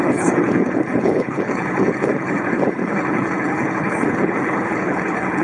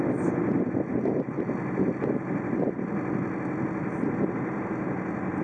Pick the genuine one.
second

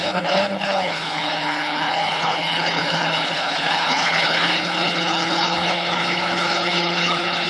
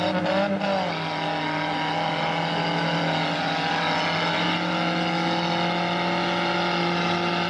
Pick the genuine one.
second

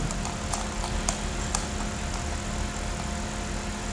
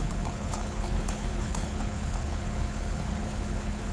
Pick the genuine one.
first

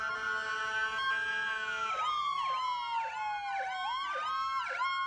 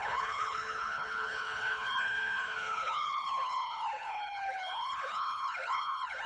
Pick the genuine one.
first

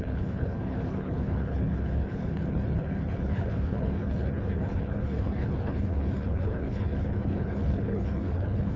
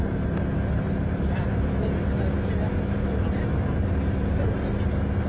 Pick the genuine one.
second